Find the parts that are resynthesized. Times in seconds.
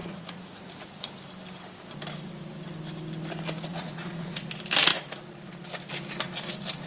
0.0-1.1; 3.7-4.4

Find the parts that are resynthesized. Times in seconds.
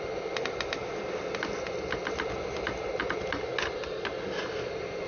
none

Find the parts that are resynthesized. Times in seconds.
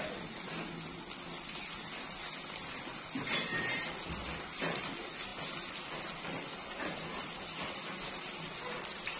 none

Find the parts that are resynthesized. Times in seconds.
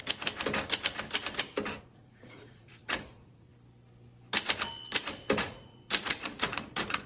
1.8-3.5; 5.4-7.1